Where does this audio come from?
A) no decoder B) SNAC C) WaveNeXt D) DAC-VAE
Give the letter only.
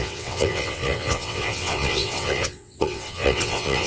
C